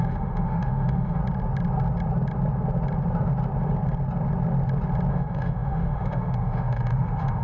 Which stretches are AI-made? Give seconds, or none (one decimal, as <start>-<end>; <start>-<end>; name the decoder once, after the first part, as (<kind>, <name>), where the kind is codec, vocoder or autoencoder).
0.0-1.2 (autoencoder, DAC-VAE); 5.1-7.4